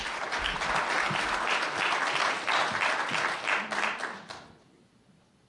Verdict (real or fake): real